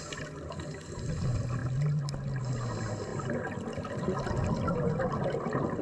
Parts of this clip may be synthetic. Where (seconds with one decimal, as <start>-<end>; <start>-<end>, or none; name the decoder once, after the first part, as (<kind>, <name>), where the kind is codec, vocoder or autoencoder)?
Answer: none